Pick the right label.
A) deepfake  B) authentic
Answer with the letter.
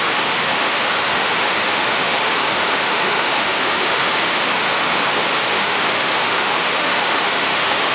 A